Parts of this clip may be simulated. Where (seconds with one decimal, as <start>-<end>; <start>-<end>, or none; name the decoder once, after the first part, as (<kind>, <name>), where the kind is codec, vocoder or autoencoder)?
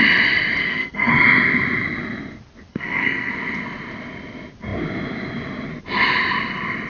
0.6-1.1 (codec, SNAC); 2.7-3.3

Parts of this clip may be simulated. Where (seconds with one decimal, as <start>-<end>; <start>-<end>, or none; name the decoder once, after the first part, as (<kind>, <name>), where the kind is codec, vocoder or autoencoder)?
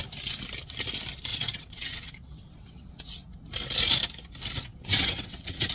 1.3-2.9 (vocoder, WaveNeXt); 4.7-5.7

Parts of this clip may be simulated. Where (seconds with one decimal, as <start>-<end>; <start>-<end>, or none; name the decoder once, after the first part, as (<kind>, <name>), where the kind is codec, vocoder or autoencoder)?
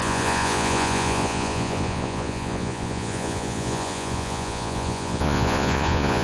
0.0-6.2 (vocoder, Vocos)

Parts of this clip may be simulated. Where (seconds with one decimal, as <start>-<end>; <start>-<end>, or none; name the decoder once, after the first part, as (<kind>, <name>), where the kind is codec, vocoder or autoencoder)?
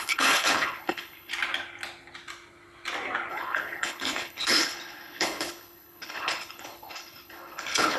0.0-1.3 (codec, HILCodec); 3.3-8.0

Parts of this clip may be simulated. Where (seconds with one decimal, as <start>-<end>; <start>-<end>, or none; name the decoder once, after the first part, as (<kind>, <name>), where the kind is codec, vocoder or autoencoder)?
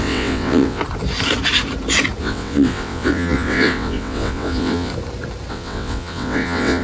0.0-0.8 (vocoder, WaveNeXt); 2.2-4.9; 5.5-6.8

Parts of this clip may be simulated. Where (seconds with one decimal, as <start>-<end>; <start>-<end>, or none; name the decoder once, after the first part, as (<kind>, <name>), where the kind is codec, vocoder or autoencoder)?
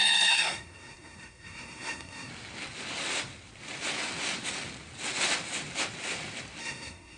0.0-2.3 (codec, SNAC); 6.6-7.2